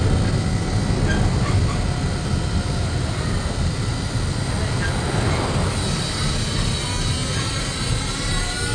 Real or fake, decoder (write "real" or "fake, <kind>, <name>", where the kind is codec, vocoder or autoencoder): real